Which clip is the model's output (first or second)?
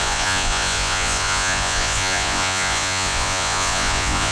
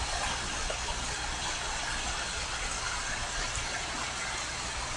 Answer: first